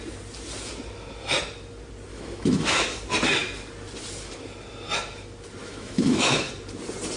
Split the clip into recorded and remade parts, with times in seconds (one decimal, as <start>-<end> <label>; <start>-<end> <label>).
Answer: 0.0-2.1 recorded; 2.1-3.0 remade; 3.0-5.6 recorded; 5.6-6.5 remade; 6.5-7.2 recorded